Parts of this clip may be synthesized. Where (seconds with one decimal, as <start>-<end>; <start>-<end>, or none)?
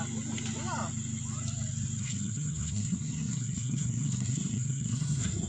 2.0-5.5